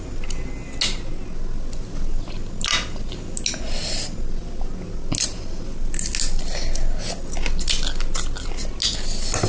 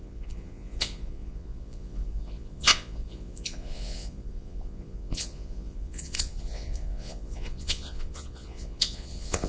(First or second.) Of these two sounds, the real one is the first